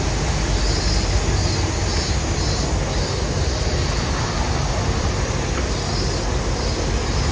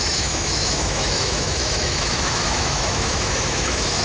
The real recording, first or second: first